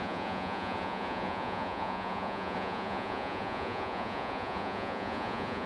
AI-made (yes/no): yes